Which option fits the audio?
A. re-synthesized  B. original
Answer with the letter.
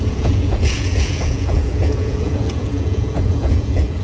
A